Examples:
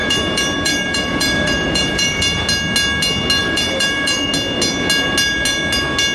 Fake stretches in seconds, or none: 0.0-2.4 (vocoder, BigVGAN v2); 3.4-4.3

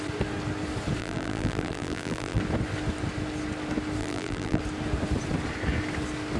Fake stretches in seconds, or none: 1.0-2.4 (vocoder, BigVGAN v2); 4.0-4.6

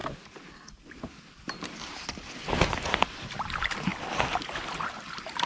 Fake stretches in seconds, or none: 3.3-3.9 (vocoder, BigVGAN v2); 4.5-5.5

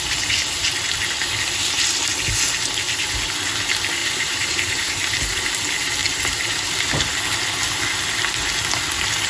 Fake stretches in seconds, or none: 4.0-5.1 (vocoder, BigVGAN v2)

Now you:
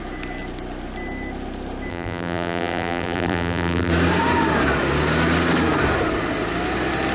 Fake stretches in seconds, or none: 1.9-3.9 (vocoder, BigVGAN v2)

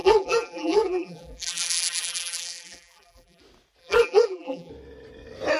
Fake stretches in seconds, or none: 0.0-3.4 (vocoder, BigVGAN v2); 3.8-4.7